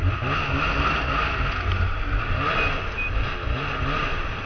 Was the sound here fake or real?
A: real